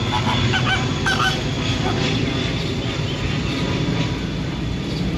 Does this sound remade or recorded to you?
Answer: recorded